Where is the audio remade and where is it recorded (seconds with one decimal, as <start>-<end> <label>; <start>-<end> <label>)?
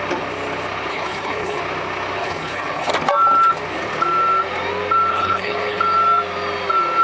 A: 0.0-0.9 recorded; 0.9-1.6 remade; 1.6-2.2 recorded; 2.2-2.9 remade; 2.9-5.1 recorded; 5.1-5.8 remade; 5.8-7.0 recorded